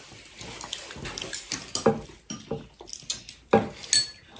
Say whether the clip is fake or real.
real